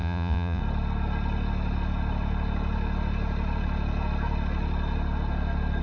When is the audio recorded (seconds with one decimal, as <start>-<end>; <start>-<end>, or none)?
0.6-5.8